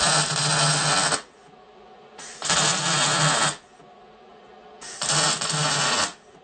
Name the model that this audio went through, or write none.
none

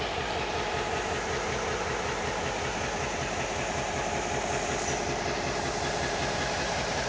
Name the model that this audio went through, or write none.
none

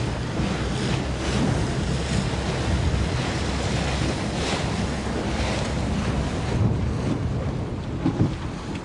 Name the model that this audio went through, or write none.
none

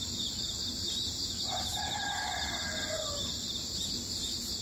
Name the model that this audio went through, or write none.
none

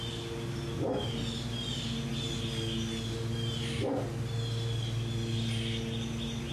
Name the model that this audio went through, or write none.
none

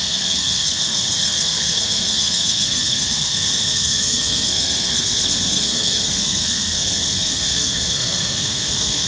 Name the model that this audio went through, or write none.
codec, SNAC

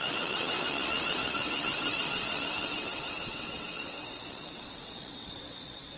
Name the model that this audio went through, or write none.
vocoder, WaveNeXt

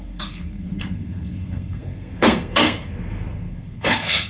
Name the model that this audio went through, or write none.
codec, SNAC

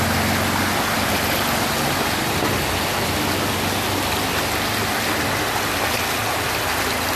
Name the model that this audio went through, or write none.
none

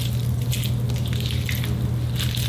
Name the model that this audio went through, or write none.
none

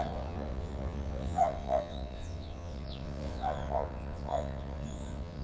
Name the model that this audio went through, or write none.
vocoder, WaveNeXt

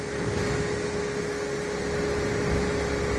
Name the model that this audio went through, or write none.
none